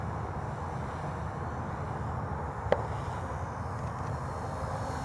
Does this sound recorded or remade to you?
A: recorded